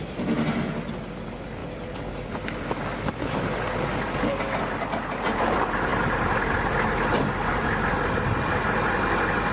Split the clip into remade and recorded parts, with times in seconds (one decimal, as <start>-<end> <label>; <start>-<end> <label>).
0.0-9.5 recorded